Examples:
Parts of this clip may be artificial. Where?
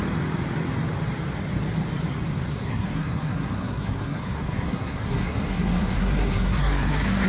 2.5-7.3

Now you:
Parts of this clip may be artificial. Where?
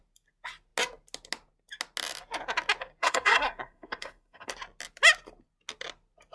3.0-4.5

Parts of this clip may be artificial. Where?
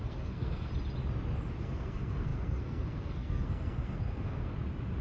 0.0-0.7; 1.6-4.5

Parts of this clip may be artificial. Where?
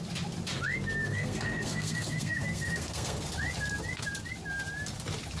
1.1-3.3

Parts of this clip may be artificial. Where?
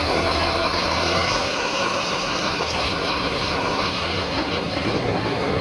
0.0-5.6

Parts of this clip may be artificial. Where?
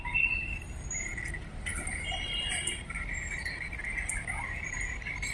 none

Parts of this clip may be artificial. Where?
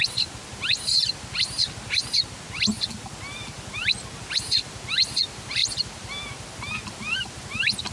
none